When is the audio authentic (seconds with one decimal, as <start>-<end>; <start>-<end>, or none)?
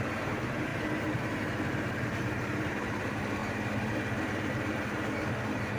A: 0.7-1.7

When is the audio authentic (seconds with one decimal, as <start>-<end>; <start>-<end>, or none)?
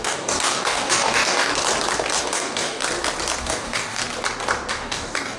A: 1.5-2.2; 2.8-3.4; 4.0-4.7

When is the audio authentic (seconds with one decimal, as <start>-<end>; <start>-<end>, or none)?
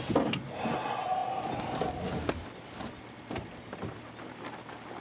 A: 0.0-5.0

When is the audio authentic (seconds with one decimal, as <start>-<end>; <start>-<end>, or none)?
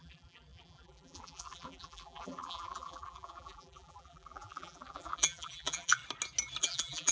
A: 6.0-6.6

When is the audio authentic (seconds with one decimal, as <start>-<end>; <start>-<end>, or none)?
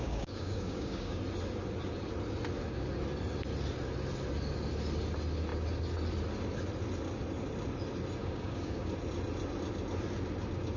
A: 1.2-8.2; 8.9-10.8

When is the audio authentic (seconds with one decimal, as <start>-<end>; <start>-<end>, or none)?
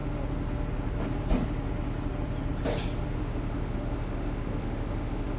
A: 0.0-3.2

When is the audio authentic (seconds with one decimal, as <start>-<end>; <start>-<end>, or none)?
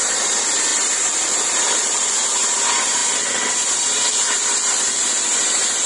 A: 0.0-0.7; 2.1-5.9